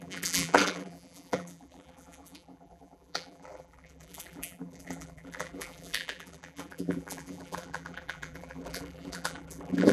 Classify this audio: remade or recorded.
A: remade